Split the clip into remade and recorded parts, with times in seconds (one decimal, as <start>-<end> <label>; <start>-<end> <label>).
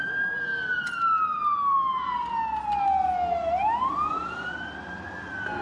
0.0-5.6 recorded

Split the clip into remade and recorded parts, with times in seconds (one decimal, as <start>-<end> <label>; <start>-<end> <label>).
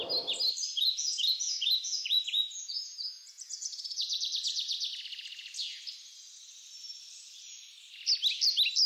0.0-0.7 recorded; 0.7-4.2 remade; 4.2-8.9 recorded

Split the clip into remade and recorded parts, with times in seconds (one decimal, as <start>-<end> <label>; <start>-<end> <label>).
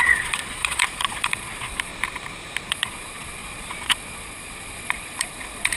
0.0-1.9 remade; 1.9-2.7 recorded; 2.7-5.8 remade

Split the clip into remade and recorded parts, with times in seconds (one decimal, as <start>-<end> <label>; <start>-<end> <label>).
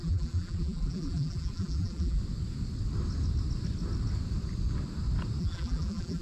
0.0-2.2 remade; 2.2-5.4 recorded; 5.4-6.2 remade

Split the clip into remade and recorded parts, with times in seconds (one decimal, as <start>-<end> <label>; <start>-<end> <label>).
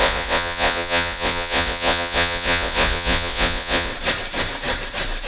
0.0-3.9 remade; 3.9-5.3 recorded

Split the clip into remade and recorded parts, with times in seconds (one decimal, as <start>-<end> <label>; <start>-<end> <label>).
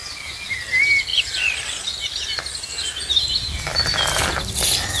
0.0-5.0 recorded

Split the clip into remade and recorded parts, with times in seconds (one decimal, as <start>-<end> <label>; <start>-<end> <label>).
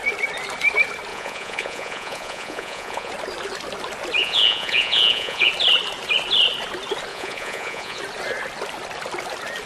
0.0-1.1 recorded; 1.1-3.1 remade; 3.1-4.2 recorded; 4.2-5.5 remade; 5.5-7.1 recorded; 7.1-8.0 remade; 8.0-9.7 recorded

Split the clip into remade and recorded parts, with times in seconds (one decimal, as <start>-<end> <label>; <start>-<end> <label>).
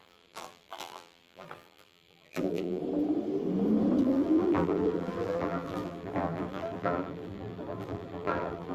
0.0-2.8 remade; 2.8-4.0 recorded; 4.0-8.7 remade